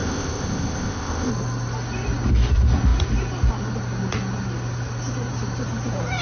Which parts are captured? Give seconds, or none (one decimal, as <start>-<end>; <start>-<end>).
1.3-6.2